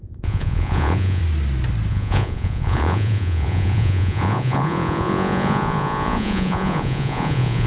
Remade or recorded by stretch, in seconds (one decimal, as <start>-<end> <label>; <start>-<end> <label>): 0.0-1.2 remade; 1.2-1.9 recorded; 1.9-7.7 remade